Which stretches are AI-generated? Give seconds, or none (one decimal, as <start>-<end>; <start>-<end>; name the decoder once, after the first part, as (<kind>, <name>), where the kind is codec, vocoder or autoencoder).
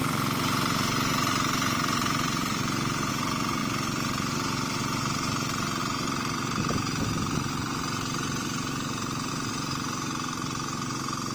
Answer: 0.0-3.1 (vocoder, BigVGAN v2); 3.6-4.8; 5.8-9.3